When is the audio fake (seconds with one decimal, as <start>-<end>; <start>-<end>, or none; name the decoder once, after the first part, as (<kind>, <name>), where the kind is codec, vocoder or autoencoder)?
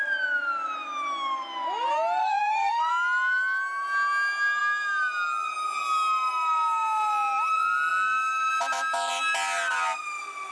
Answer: 2.2-2.9 (codec, SNAC)